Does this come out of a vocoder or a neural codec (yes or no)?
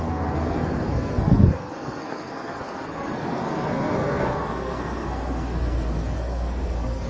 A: yes